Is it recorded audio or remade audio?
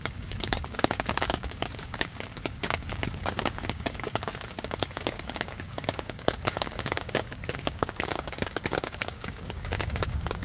remade